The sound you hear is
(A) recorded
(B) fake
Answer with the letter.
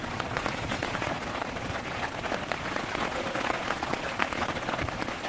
B